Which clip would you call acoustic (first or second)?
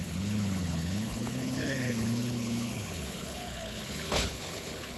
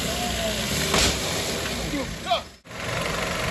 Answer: second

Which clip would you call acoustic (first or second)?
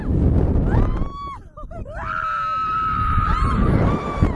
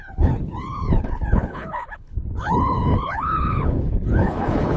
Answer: first